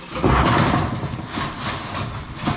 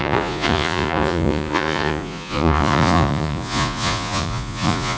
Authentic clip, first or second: first